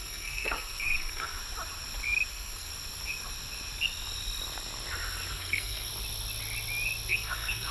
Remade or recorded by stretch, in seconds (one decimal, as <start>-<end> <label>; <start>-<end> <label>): 0.0-1.4 remade; 1.4-2.3 recorded; 2.3-2.7 remade; 2.7-5.3 recorded; 5.3-5.9 remade; 5.9-7.1 recorded; 7.1-7.7 remade